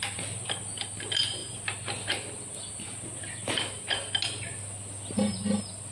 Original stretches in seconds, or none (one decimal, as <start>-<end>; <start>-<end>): 0.0-5.9

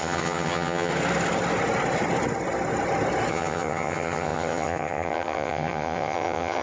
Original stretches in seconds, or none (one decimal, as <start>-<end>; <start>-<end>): 0.9-3.3

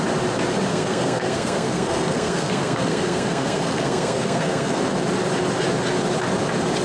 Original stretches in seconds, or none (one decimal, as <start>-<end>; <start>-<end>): 0.0-0.7; 4.8-6.8

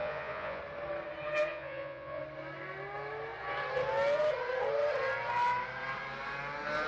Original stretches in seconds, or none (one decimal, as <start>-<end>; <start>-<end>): 0.6-1.5; 2.2-6.9

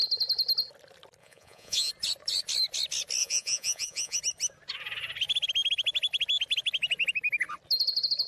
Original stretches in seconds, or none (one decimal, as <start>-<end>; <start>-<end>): 0.0-1.2; 1.9-3.2; 4.2-8.3